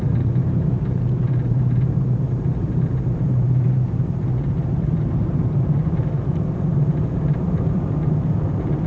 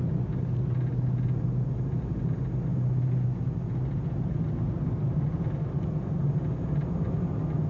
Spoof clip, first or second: first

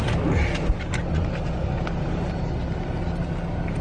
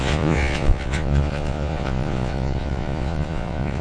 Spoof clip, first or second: second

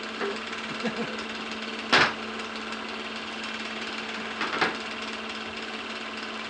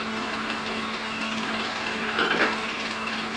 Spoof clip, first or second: second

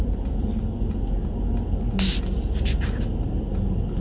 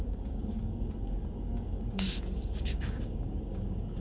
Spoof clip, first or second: second